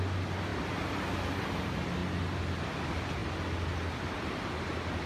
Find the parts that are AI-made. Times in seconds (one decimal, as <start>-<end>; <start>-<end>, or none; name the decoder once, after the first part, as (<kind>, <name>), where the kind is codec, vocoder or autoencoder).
none